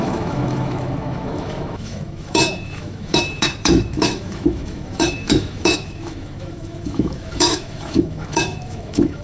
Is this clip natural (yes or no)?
no